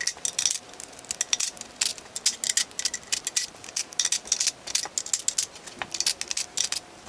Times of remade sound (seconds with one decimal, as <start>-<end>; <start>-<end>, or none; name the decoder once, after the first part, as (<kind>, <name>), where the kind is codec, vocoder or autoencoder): none